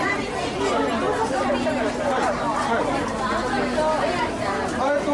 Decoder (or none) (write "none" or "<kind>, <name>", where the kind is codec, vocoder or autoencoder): none